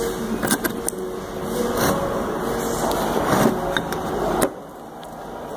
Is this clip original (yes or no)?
yes